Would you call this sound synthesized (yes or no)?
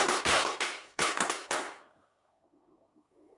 yes